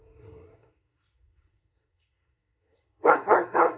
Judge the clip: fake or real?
fake